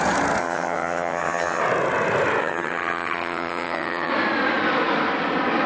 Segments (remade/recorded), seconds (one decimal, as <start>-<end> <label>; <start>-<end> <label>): 0.0-0.4 recorded; 0.4-1.6 remade; 1.6-2.4 recorded; 2.4-4.1 remade; 4.1-5.7 recorded